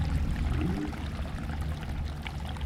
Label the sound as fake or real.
real